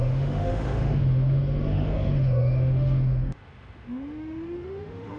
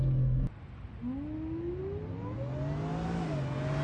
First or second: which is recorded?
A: second